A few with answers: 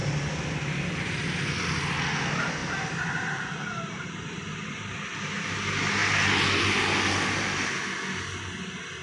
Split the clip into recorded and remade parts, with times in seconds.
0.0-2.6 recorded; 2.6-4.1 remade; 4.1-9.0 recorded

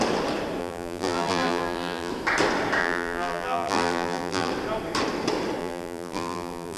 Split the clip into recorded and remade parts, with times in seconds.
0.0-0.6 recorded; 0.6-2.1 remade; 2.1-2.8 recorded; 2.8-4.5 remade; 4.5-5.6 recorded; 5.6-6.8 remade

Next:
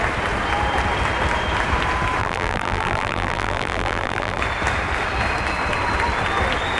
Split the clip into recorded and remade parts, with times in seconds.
0.0-2.2 recorded; 2.2-4.4 remade; 4.4-6.8 recorded

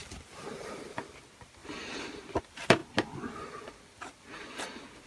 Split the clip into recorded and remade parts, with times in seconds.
0.0-5.1 recorded